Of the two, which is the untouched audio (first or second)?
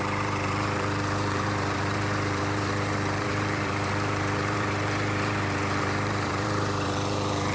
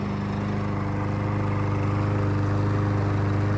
second